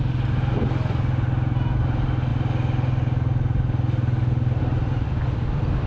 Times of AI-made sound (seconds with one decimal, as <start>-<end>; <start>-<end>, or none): none

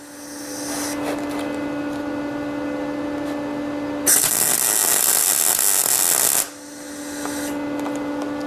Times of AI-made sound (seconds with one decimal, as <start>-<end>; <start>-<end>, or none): none

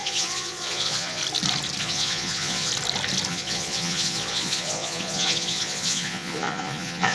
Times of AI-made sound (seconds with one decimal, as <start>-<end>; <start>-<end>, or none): 0.0-1.2; 1.8-2.7; 3.3-7.1

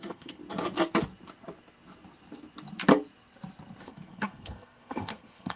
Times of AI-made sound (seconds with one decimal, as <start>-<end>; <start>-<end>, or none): 0.0-0.4; 3.8-5.6